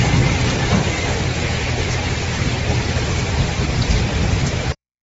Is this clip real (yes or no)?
no